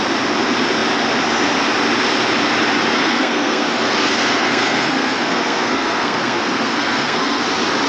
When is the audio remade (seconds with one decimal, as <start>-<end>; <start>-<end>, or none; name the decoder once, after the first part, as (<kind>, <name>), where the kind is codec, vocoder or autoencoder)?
2.9-7.4 (codec, SNAC)